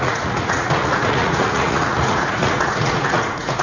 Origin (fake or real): fake